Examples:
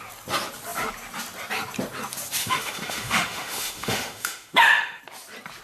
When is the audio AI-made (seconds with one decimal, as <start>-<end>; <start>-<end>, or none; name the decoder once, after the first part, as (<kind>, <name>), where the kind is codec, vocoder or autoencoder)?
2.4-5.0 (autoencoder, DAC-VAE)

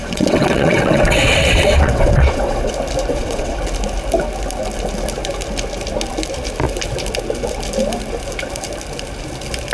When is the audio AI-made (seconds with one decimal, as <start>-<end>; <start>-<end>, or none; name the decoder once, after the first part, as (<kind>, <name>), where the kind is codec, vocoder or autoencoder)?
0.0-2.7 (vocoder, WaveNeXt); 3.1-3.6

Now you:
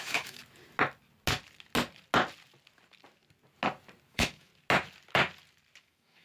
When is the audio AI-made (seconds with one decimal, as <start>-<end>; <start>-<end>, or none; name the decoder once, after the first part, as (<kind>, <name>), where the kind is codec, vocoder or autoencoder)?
0.0-0.4 (autoencoder, DAC-VAE); 4.1-4.5; 5.8-6.2

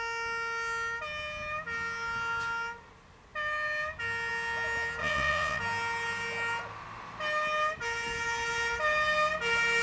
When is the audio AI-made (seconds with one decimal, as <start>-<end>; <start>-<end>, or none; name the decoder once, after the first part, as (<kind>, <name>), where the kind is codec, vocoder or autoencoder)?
5.0-5.6 (vocoder, Vocos)